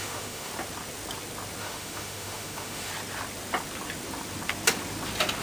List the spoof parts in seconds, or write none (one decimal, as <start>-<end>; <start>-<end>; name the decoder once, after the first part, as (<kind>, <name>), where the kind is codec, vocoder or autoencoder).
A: 0.0-0.5 (autoencoder, DAC-VAE); 1.6-2.9